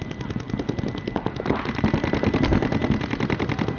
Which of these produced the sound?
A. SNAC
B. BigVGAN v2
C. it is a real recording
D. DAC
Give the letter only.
C